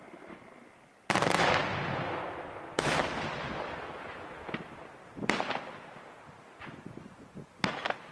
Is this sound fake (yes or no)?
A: no